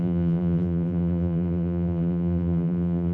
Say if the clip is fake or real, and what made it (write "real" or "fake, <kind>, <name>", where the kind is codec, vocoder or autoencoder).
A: fake, vocoder, BigVGAN v2